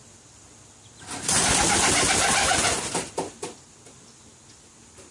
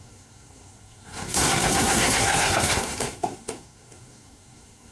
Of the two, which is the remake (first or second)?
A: second